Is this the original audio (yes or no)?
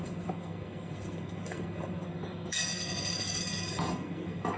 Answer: no